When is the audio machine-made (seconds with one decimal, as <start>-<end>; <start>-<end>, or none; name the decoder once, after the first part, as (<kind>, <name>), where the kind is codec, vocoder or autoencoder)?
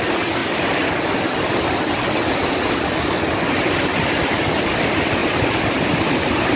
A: 5.2-6.6 (vocoder, BigVGAN v2)